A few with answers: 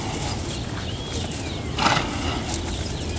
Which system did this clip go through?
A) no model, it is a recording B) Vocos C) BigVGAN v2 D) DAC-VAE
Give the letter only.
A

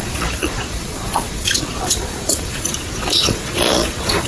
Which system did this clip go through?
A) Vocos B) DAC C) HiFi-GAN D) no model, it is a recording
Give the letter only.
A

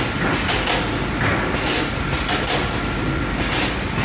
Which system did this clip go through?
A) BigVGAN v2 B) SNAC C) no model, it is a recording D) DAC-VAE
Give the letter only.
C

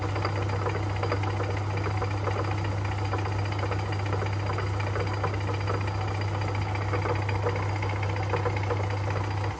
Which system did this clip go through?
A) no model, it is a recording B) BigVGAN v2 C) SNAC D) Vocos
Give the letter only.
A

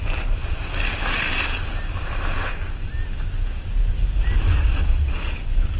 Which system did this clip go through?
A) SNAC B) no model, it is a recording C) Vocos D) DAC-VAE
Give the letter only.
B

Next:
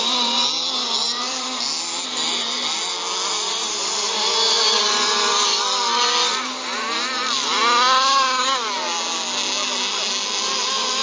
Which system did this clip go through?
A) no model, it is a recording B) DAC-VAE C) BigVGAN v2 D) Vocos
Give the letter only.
A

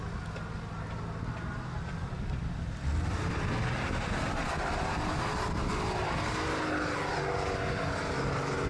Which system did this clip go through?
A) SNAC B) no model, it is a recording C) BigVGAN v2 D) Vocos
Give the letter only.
B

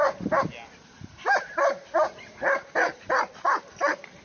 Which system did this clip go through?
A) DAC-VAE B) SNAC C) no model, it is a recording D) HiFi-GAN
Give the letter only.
C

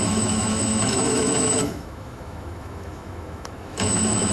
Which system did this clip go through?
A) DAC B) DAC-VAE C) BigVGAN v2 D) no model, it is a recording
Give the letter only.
B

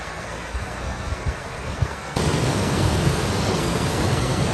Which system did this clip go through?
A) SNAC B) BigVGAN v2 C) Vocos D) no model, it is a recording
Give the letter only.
A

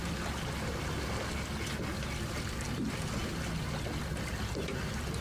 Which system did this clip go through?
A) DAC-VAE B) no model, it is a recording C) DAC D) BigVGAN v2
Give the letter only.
B